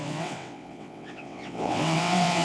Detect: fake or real fake